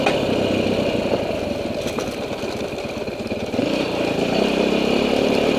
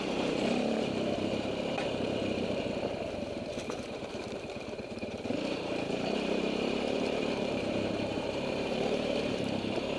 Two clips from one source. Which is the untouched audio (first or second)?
first